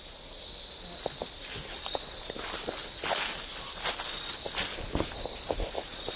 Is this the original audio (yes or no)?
yes